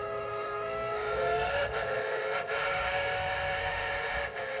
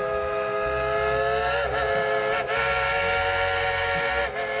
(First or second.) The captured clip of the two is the second